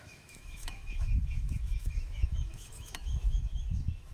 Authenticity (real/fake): fake